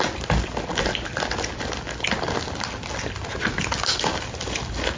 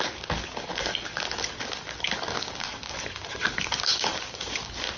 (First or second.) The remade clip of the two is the second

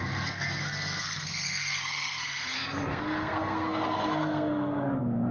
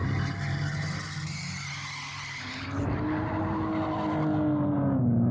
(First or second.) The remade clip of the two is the first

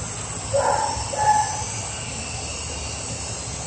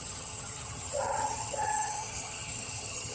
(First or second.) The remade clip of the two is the second